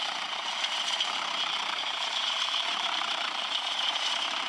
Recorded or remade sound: remade